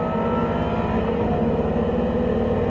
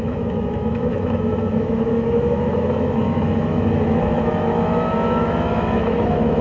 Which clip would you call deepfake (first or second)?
second